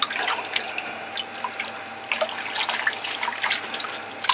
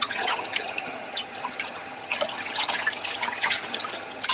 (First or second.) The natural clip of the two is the first